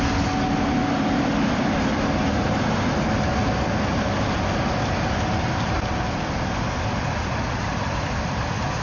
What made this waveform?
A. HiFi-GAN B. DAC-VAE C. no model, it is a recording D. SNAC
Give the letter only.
C